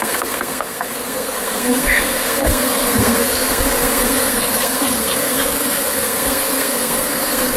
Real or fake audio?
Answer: fake